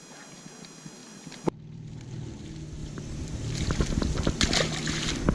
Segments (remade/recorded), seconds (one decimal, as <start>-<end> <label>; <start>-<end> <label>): 0.0-1.0 recorded; 1.0-1.9 remade; 1.9-2.8 recorded; 2.8-3.7 remade; 3.7-5.3 recorded